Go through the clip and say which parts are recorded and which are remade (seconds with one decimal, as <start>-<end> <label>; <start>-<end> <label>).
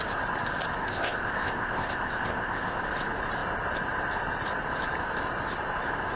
0.0-0.8 recorded; 0.8-2.8 remade; 2.8-6.2 recorded